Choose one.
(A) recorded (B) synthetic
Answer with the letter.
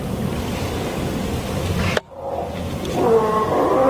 A